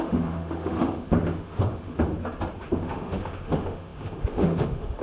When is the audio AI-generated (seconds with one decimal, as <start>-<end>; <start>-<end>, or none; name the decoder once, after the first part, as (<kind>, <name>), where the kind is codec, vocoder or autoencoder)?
0.0-2.1 (autoencoder, DAC-VAE); 2.6-5.0